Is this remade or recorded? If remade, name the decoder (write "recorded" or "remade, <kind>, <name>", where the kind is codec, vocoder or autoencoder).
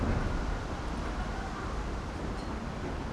recorded